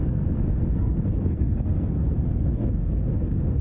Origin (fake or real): fake